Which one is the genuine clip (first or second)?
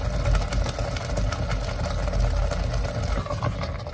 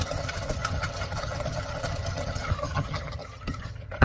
first